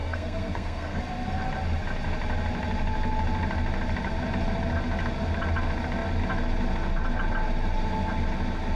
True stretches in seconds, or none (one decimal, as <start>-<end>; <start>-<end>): 1.0-8.8